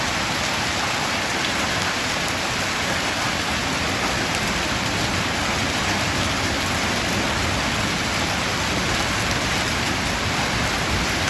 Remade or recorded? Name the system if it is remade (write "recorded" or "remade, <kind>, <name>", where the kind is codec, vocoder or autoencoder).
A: recorded